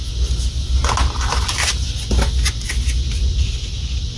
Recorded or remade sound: recorded